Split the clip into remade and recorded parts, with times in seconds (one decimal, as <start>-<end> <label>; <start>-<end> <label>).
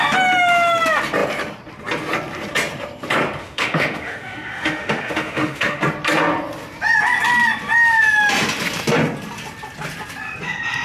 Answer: 0.0-3.4 recorded; 3.4-5.8 remade; 5.8-10.8 recorded